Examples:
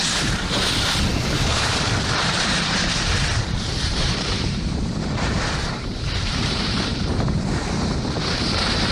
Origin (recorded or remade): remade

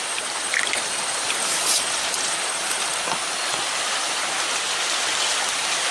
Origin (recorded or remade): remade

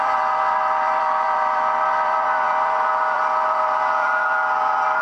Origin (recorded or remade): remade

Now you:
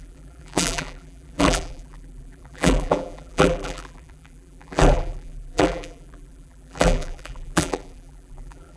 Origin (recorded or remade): remade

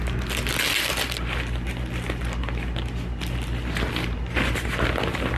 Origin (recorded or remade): recorded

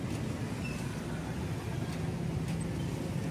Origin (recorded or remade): recorded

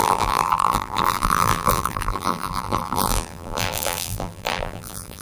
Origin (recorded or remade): remade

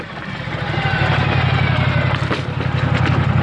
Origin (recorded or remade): recorded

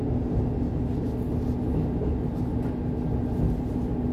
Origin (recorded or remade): recorded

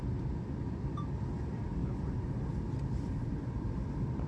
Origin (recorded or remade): remade